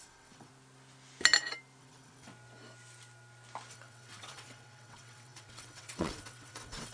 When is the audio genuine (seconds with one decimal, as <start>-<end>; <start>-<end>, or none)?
0.5-1.8; 2.3-3.7